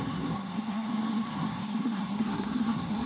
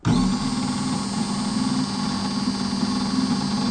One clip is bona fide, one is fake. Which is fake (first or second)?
first